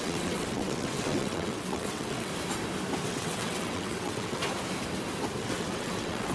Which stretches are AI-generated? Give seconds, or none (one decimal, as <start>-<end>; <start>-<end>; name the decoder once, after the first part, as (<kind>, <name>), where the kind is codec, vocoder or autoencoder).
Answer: 0.0-2.3 (vocoder, WaveNeXt); 3.1-4.4; 5.4-6.3